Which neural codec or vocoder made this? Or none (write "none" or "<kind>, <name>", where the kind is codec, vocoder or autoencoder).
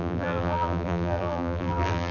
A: vocoder, BigVGAN v2